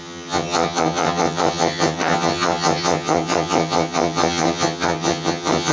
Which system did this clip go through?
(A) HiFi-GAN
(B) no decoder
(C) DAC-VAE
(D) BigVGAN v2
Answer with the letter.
A